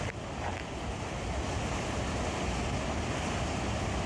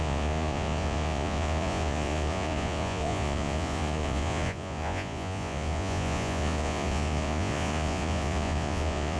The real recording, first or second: first